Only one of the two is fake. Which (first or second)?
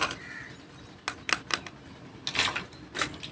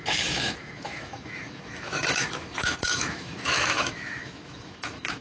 second